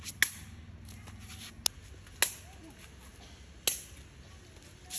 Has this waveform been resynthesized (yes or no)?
no